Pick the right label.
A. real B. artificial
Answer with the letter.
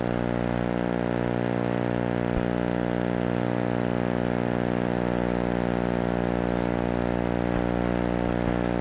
A